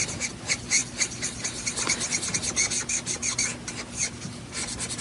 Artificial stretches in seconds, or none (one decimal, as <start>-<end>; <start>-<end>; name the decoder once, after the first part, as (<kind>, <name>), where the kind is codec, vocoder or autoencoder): none